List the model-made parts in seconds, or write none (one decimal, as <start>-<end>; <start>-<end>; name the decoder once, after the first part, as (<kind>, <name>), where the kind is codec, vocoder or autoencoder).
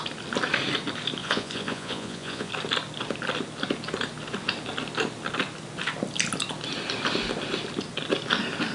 1.2-2.5 (vocoder, Vocos)